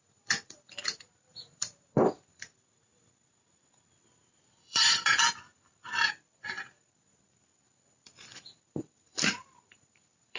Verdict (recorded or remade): remade